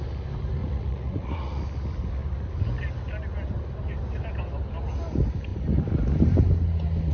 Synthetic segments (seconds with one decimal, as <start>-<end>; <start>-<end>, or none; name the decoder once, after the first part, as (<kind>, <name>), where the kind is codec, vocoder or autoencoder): 0.6-1.6 (vocoder, Vocos)

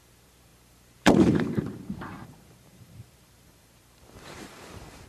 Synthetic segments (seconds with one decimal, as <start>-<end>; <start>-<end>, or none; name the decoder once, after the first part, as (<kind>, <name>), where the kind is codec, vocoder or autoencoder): 0.0-5.1 (vocoder, BigVGAN v2)